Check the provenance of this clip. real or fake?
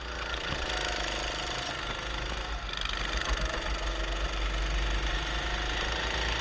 real